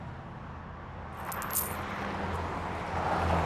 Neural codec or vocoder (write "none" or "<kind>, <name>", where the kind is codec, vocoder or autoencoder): none